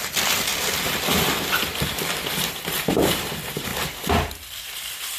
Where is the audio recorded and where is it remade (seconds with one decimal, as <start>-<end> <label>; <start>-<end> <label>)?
0.0-0.5 remade; 0.5-1.7 recorded; 1.7-5.2 remade